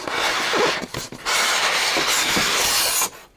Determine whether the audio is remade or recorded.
recorded